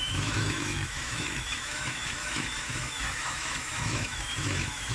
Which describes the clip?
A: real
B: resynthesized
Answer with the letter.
B